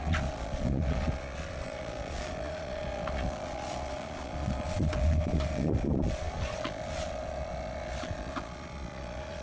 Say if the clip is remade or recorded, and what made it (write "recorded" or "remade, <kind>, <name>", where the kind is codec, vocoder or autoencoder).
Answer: remade, vocoder, Vocos